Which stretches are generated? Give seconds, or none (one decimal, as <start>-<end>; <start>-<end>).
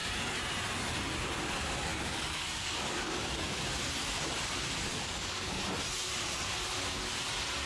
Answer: 1.9-3.6; 4.9-5.6